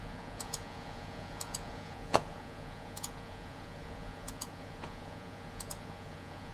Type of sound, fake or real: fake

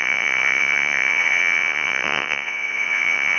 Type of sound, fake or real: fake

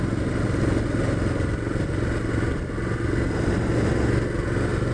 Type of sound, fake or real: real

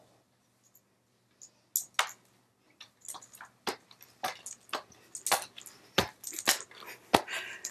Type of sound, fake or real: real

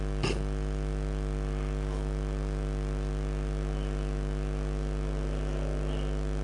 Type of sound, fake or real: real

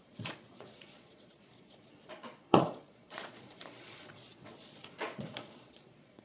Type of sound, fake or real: fake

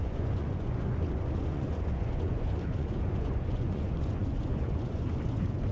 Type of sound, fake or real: fake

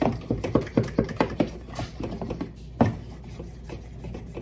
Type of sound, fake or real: real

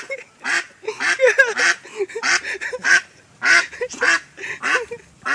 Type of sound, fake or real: real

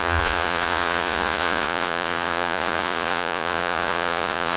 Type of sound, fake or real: fake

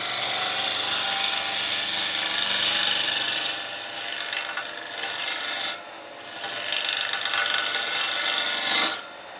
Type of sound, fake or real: real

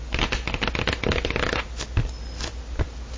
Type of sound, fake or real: real